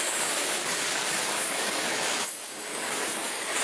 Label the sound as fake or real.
fake